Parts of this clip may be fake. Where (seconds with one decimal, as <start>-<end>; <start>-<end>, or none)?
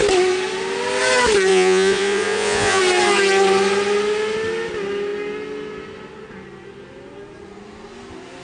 1.5-2.8